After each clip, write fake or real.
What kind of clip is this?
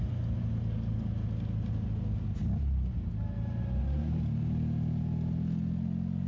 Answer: real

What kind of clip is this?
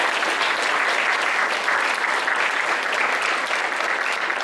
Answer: real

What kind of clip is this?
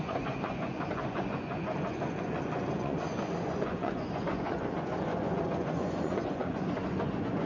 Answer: fake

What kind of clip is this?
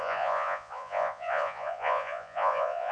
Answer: fake